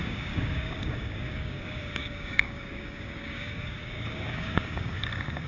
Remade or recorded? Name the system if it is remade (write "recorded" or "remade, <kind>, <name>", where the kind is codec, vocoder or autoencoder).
remade, codec, DAC